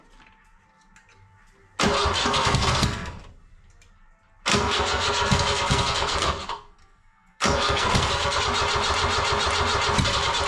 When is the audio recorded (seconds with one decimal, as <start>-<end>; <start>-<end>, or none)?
0.0-2.2; 3.2-4.5; 8.4-10.5